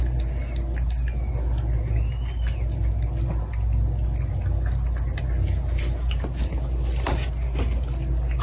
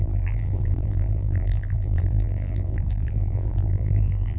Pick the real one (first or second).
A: first